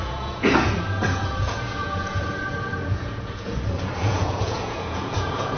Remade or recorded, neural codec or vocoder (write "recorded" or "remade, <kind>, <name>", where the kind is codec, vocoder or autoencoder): remade, vocoder, Vocos